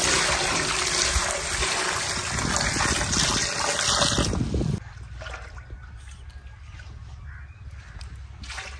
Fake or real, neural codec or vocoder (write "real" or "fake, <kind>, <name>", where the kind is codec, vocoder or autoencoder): real